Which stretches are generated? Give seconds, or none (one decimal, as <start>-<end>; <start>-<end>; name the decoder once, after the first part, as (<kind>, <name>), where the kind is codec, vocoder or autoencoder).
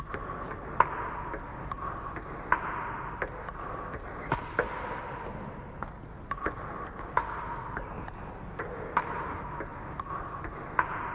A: none